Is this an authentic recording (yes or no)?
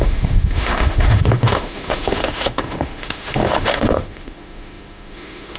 no